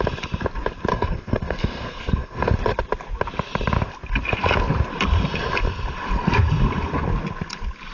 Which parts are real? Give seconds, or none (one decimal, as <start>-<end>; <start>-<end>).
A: 0.0-0.9; 2.5-7.9